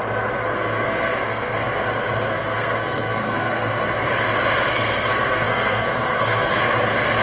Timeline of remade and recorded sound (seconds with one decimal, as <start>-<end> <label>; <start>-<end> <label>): 0.0-0.4 recorded; 0.4-1.8 remade; 1.8-2.3 recorded; 2.3-4.1 remade; 4.1-4.7 recorded; 4.7-6.6 remade; 6.6-7.2 recorded